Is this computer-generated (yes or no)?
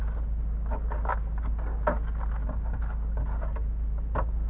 no